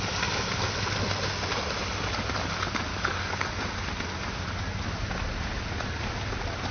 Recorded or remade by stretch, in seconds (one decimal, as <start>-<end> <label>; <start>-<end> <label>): 0.0-2.9 recorded; 2.9-3.5 remade; 3.5-6.7 recorded